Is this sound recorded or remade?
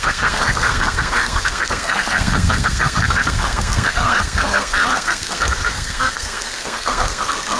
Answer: remade